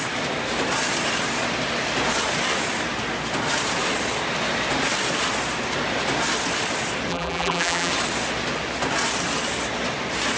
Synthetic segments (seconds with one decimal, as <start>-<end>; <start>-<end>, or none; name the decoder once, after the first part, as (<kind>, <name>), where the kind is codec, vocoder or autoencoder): 7.1-7.9 (vocoder, BigVGAN v2)